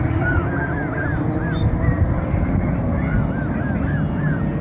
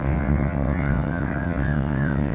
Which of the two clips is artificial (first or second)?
second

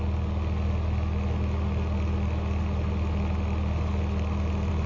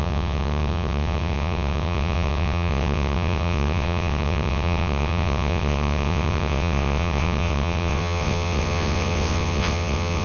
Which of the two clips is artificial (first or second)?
second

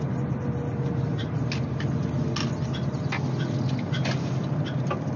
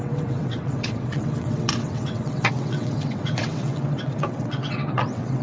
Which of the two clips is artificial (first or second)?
second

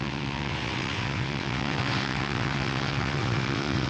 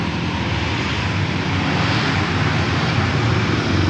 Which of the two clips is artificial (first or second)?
first